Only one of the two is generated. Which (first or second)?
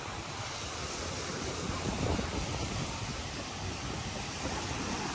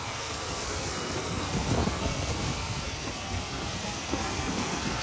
second